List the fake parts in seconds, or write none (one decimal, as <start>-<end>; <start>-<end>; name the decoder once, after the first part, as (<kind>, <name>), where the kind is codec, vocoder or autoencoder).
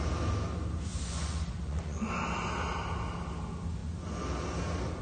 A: 0.9-2.1 (vocoder, Vocos)